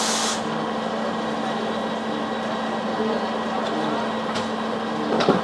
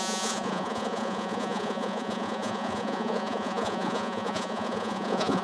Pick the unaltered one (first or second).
first